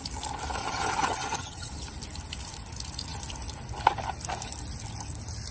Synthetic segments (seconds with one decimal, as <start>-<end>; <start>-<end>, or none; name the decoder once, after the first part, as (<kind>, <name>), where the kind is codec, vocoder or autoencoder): 0.6-1.7 (vocoder, HiFi-GAN)